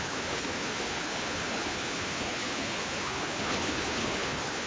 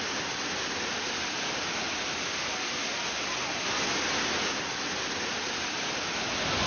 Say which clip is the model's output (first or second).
first